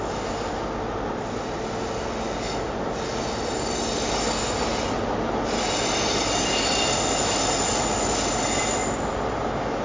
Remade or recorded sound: recorded